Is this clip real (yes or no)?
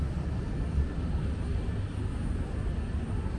yes